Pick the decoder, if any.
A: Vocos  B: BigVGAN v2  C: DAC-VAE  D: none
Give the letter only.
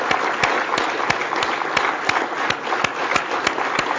D